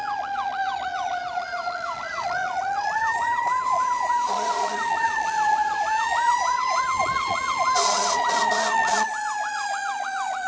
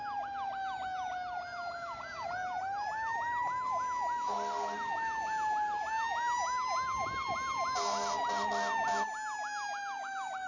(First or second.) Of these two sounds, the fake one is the first